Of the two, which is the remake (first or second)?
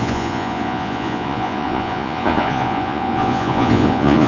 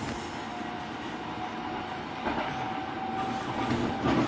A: first